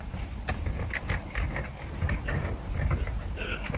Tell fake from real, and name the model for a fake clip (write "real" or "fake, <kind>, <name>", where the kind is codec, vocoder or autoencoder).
real